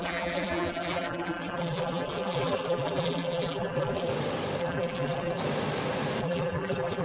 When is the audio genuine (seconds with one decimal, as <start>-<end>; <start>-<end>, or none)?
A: 4.1-4.6; 5.4-6.2